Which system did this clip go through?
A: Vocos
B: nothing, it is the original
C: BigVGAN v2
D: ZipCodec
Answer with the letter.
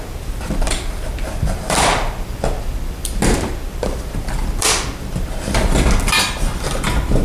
C